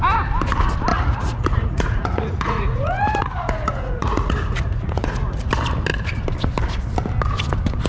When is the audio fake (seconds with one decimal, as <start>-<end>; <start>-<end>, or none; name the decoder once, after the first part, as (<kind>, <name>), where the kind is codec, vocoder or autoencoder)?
0.9-5.5 (vocoder, Vocos)